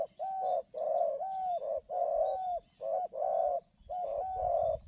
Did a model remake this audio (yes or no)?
no